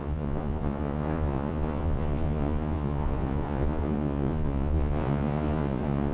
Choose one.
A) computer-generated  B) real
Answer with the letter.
A